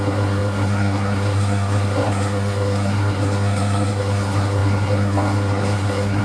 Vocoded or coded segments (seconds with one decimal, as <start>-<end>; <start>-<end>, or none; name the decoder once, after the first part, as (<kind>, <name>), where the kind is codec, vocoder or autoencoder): 0.0-6.2 (codec, SNAC)